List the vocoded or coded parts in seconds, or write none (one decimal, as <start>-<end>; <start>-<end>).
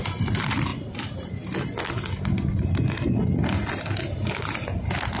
none